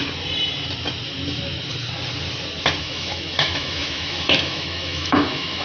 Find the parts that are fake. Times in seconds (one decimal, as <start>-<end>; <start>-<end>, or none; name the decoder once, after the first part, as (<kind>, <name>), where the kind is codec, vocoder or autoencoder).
2.8-5.6 (autoencoder, DAC-VAE)